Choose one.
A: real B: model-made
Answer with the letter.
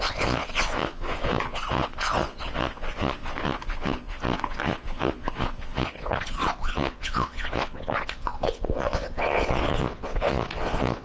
B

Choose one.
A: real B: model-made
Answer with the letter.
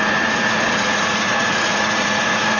B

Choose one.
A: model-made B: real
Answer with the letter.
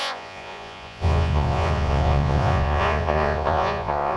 A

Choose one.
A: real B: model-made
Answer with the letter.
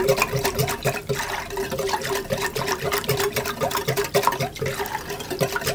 A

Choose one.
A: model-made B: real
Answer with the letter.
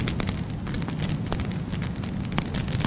B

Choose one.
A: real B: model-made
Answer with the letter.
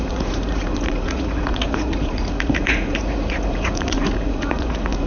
B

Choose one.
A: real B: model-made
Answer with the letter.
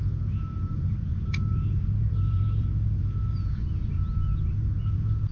B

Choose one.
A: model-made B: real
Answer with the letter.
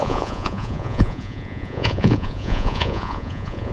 A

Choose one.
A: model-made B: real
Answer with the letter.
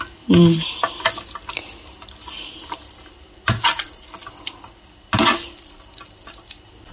B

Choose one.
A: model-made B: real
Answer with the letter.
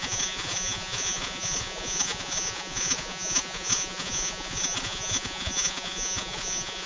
A